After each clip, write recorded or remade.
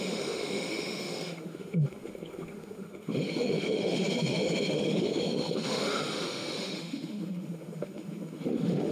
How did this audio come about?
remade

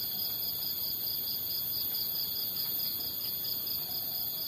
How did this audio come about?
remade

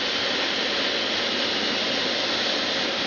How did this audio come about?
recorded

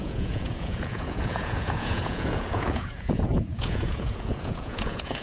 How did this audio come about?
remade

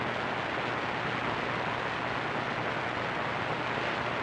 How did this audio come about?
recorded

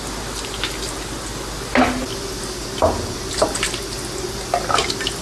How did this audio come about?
recorded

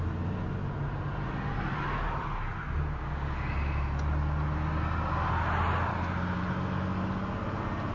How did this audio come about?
recorded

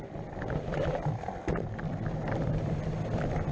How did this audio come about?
recorded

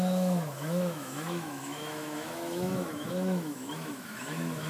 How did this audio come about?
remade